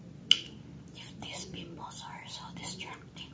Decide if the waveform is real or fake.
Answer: real